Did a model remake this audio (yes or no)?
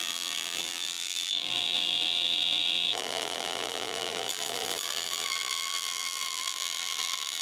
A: yes